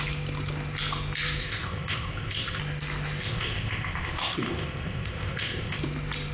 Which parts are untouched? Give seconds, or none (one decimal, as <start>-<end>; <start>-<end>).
0.0-1.4; 2.6-3.2; 5.8-6.3